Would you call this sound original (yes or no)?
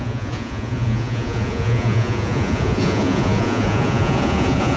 no